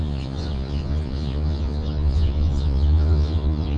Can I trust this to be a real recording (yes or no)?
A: no